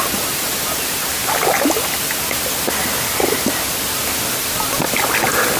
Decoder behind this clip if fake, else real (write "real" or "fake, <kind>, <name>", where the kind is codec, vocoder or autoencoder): real